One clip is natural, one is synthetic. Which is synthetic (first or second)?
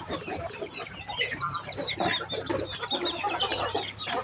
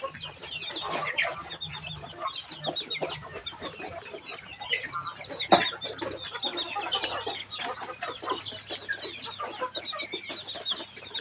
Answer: first